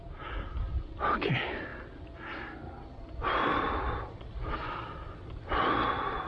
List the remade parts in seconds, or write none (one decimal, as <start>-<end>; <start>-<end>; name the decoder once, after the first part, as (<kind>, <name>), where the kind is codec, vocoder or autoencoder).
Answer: none